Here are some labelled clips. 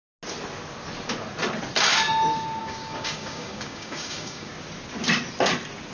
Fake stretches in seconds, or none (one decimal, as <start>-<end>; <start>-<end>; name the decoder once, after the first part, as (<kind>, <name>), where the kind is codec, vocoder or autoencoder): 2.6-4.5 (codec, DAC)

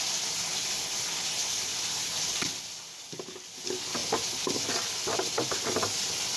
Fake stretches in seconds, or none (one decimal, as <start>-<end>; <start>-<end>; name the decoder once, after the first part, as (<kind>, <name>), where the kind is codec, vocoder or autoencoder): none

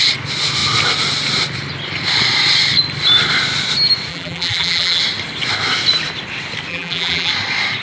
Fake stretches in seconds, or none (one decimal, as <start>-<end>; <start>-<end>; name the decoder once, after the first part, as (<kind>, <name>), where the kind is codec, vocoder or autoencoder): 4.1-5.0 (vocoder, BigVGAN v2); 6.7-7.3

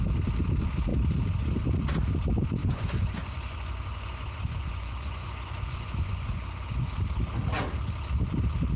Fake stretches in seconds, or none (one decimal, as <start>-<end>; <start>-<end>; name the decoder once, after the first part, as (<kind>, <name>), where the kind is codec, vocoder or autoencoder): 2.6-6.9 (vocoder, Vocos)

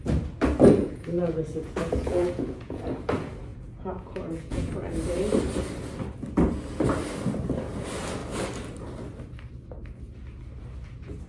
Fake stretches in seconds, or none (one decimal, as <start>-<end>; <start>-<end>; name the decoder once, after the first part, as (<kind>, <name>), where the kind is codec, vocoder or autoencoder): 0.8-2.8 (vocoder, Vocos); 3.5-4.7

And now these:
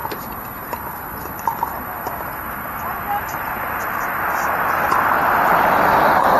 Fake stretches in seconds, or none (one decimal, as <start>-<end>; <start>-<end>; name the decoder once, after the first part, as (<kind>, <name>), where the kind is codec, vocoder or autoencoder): none

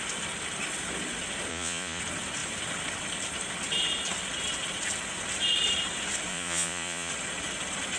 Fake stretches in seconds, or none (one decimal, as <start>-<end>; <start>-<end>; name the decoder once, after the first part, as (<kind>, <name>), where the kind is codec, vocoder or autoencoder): 1.5-2.0 (vocoder, Vocos); 6.3-7.1